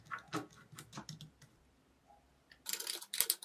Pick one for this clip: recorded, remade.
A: recorded